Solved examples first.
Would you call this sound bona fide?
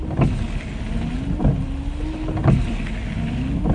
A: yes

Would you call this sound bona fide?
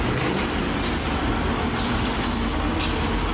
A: yes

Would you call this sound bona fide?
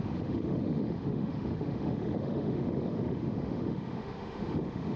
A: no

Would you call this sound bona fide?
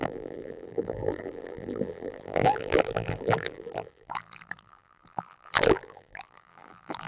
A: no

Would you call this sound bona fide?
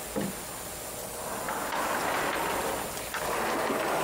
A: yes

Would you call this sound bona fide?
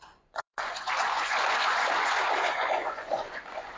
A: no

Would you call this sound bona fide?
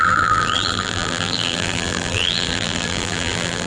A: no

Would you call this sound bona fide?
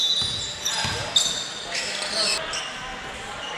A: yes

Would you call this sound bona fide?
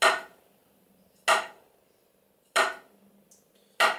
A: yes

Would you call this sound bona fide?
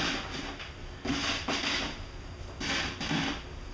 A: yes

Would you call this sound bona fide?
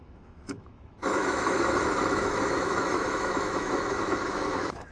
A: no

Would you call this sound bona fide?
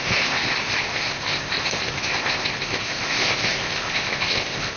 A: no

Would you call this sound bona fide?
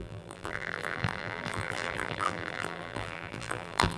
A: no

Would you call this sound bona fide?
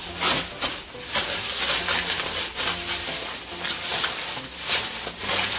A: yes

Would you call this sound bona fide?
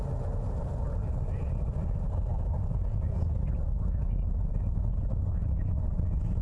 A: yes